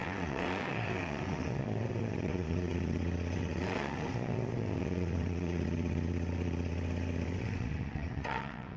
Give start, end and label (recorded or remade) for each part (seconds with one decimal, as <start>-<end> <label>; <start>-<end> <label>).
0.0-8.8 remade